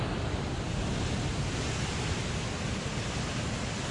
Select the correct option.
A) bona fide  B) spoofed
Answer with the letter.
A